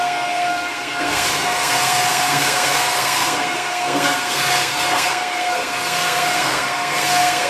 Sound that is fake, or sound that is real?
fake